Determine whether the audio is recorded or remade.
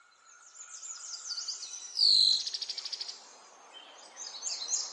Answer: recorded